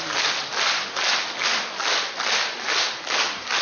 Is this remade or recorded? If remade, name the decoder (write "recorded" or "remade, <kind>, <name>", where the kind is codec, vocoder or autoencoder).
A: recorded